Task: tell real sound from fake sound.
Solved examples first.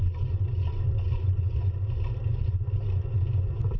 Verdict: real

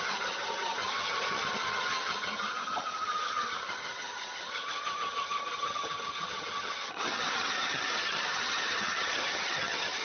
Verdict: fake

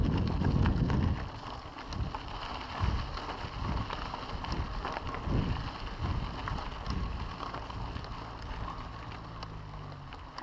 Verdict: real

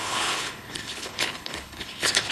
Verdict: fake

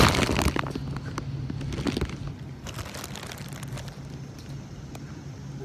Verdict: real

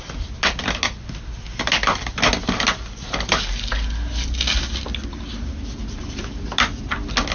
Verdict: real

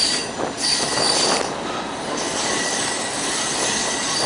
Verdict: real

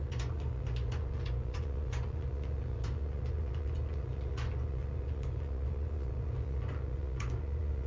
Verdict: fake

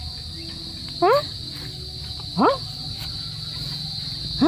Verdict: real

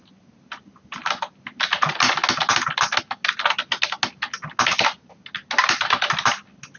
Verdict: real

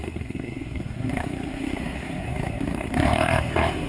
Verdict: fake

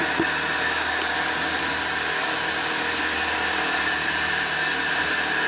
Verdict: real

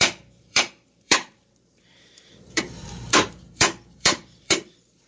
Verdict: fake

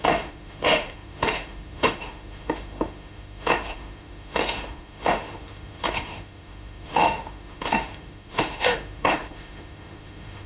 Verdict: fake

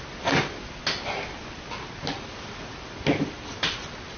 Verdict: real